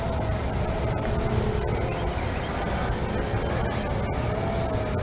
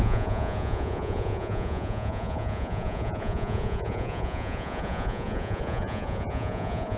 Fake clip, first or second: second